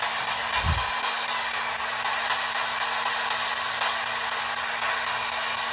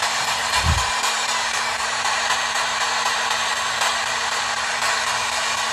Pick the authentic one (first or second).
first